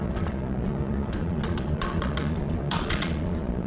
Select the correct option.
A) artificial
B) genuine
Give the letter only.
A